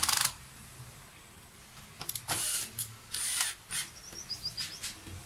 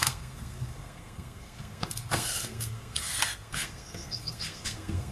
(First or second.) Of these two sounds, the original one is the first